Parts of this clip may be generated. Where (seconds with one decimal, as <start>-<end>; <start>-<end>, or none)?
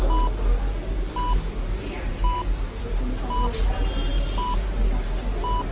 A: none